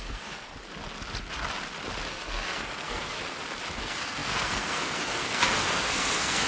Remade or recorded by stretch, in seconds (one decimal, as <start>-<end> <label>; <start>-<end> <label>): 0.0-0.5 remade; 0.5-2.1 recorded; 2.1-3.2 remade; 3.2-3.8 recorded; 3.8-6.5 remade